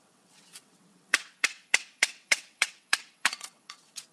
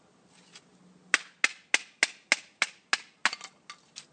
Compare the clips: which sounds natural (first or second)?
second